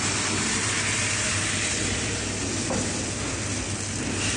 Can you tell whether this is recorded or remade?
recorded